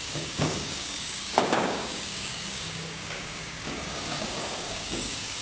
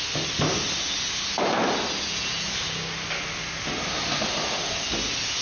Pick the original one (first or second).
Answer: second